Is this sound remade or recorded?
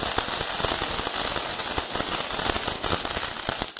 recorded